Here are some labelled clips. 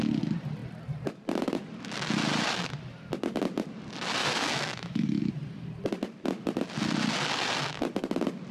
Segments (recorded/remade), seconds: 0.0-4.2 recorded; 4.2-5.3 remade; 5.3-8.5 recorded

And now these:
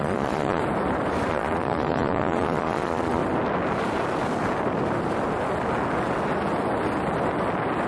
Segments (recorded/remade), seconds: 0.0-0.6 remade; 0.6-1.3 recorded; 1.3-3.2 remade; 3.2-7.9 recorded

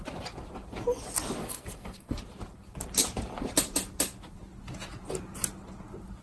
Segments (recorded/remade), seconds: 0.0-1.4 recorded; 1.4-2.2 remade; 2.2-6.2 recorded

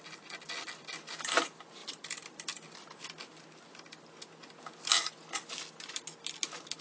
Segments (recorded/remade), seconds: 0.0-6.8 recorded